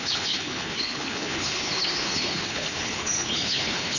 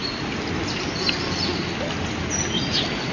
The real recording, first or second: second